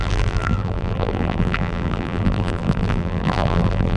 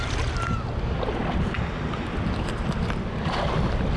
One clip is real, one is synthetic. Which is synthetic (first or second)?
first